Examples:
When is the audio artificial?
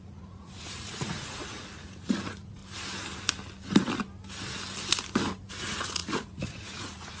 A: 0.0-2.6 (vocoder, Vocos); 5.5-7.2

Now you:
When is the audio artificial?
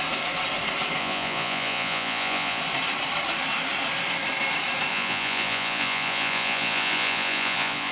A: 1.0-2.6 (vocoder, Vocos); 4.9-7.9